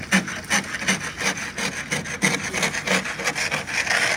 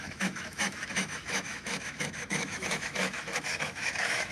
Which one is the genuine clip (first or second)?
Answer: first